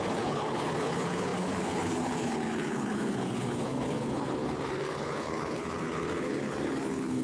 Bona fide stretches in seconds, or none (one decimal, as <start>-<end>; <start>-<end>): none